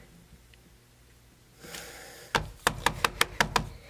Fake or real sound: real